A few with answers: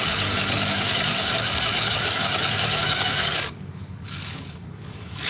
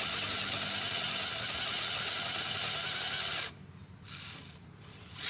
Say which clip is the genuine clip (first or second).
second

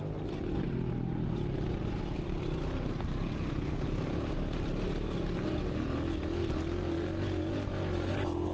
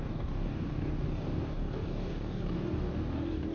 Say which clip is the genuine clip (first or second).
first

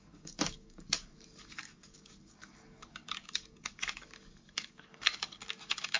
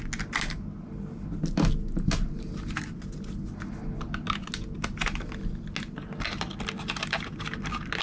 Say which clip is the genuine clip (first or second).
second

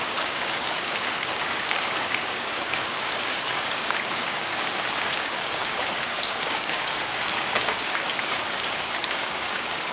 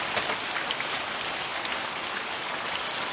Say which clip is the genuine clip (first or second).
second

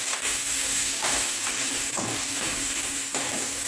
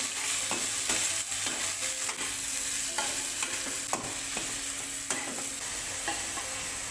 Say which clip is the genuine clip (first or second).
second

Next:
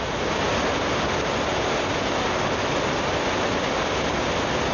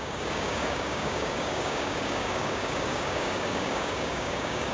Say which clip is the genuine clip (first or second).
first